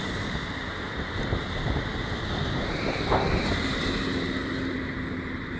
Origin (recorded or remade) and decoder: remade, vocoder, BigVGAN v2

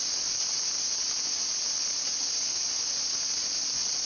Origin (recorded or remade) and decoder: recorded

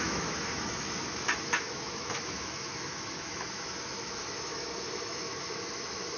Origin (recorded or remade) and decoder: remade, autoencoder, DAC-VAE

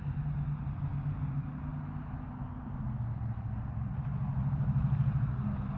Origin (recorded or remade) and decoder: recorded